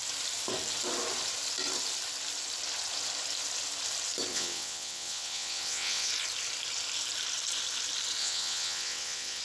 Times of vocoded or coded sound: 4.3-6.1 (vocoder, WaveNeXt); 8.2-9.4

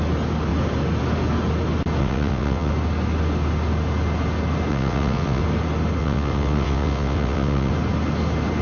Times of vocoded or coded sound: 2.0-2.7 (vocoder, WaveNeXt); 4.7-5.4; 6.0-7.7

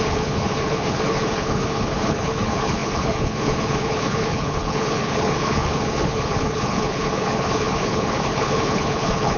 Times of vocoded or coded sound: 0.0-9.4 (codec, HILCodec)

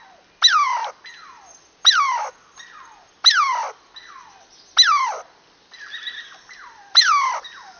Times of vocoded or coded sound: none

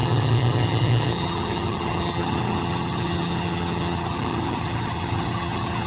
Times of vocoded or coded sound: 0.0-5.9 (vocoder, HiFi-GAN)